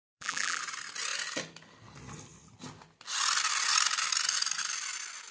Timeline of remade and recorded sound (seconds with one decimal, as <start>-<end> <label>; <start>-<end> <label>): 0.0-0.6 remade; 0.6-5.3 recorded